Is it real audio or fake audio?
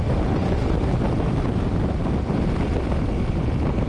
real